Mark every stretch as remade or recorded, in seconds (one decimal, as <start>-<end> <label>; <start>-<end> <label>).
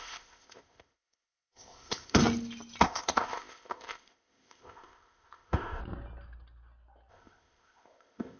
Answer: 0.0-2.2 remade; 2.2-2.8 recorded; 2.8-5.8 remade; 5.8-7.1 recorded; 7.1-8.4 remade